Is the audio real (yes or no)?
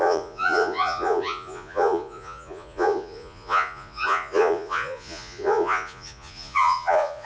no